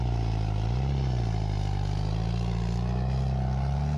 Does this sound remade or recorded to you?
recorded